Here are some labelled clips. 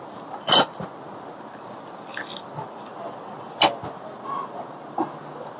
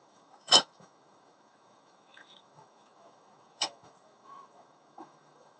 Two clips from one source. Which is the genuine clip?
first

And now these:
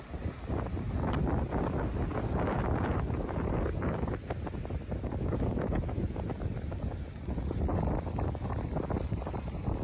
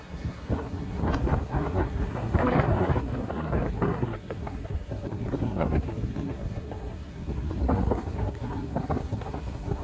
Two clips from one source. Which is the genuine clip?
first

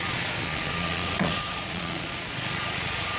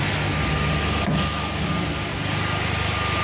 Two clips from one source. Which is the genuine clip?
second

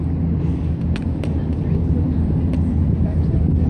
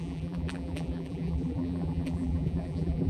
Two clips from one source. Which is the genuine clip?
first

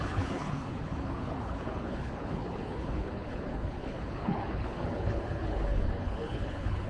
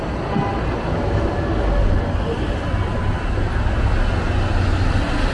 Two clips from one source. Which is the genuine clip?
second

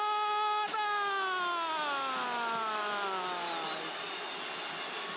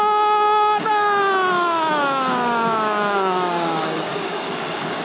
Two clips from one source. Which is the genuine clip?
first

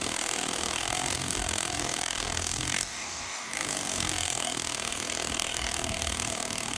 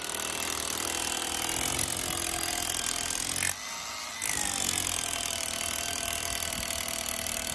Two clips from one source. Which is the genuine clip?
second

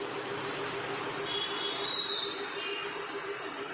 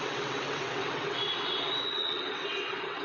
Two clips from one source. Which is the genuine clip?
first